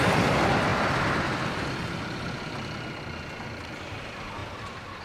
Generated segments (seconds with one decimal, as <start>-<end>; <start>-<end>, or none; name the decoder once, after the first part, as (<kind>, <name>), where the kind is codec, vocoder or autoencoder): none